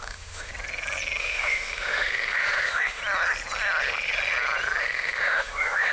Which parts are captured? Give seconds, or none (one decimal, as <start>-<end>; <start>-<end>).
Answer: 0.5-1.2; 3.0-4.8